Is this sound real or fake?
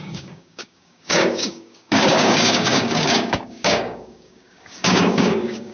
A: fake